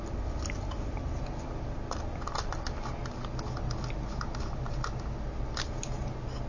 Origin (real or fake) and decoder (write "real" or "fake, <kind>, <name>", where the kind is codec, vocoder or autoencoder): real